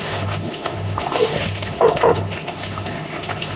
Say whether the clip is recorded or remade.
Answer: remade